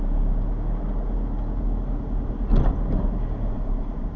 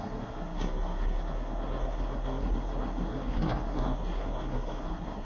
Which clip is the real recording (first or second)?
first